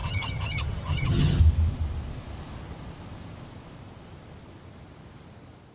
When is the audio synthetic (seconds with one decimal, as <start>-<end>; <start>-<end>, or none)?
0.0-1.4